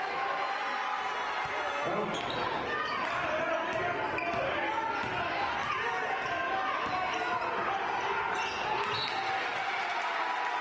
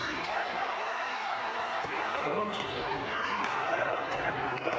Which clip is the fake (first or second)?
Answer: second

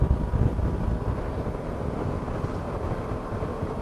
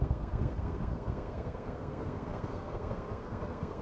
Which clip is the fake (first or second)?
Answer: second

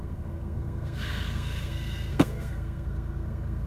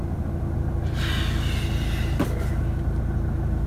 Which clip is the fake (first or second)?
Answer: first